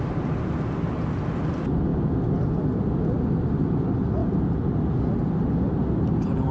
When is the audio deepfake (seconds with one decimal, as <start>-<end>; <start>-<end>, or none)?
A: none

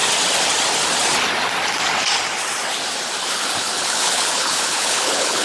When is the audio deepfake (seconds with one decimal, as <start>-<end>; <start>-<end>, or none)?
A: 3.2-5.4

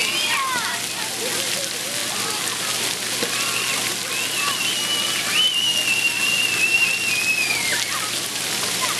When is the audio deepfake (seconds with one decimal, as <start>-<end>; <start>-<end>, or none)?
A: none

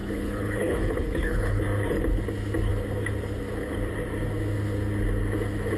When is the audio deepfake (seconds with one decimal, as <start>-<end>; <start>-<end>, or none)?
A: 0.0-1.6

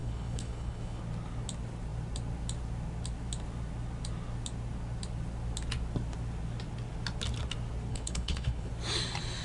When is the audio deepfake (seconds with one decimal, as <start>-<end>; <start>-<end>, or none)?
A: 0.0-1.0; 7.9-8.7

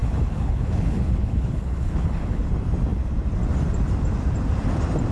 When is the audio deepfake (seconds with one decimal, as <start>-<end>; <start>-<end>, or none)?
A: 0.0-2.5